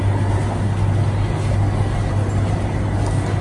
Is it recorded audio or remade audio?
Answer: recorded